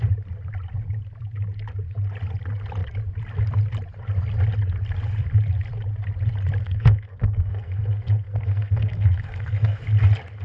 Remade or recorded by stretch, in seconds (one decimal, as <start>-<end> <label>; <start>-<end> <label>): 0.0-6.6 recorded; 6.6-9.8 remade; 9.8-10.4 recorded